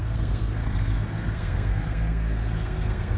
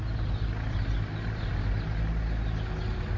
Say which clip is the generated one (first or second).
first